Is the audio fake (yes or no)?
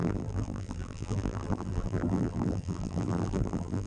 yes